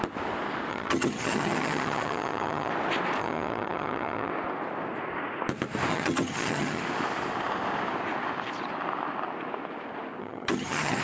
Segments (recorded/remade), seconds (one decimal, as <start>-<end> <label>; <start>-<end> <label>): 0.0-0.7 recorded; 0.7-2.7 remade; 2.7-3.2 recorded; 3.2-4.3 remade; 4.3-5.9 recorded; 5.9-6.8 remade; 6.8-10.2 recorded; 10.2-11.0 remade